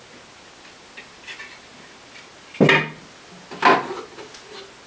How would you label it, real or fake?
real